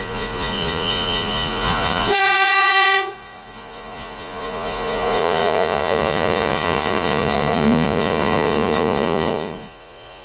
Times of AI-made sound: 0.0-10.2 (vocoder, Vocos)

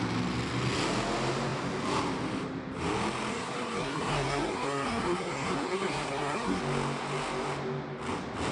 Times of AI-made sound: 3.3-6.6 (codec, SNAC)

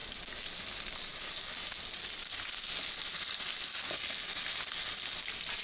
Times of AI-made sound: none